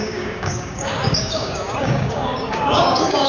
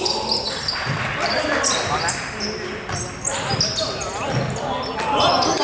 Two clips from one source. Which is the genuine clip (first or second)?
second